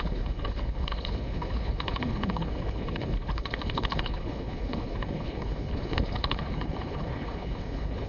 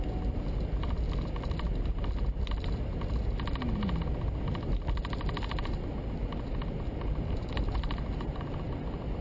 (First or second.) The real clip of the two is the second